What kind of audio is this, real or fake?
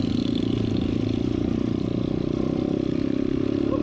real